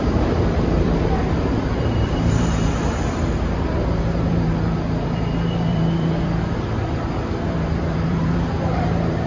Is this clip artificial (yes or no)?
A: yes